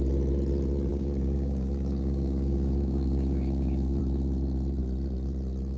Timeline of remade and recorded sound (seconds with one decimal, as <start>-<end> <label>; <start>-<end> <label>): 0.0-0.9 recorded; 0.9-4.0 remade; 4.0-5.8 recorded